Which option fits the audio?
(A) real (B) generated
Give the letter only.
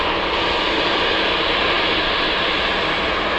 A